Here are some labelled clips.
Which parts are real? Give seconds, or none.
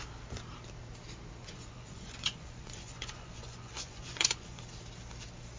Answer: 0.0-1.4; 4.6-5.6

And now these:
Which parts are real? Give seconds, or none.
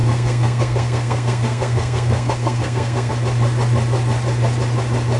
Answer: 3.1-5.2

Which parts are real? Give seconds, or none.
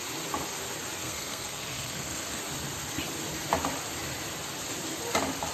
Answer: 0.0-1.0; 2.4-5.5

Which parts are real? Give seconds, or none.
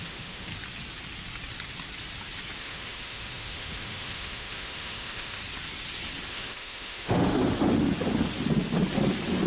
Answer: 0.5-2.6; 5.4-6.3; 7.4-9.5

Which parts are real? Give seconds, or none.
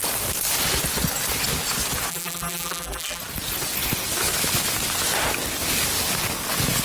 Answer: 0.0-2.1; 3.2-6.8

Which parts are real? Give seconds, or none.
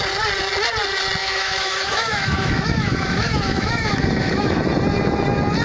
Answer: 0.0-1.2; 4.6-5.6